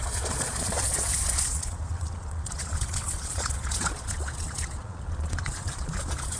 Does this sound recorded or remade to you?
remade